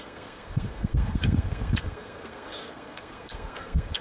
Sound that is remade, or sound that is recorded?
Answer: remade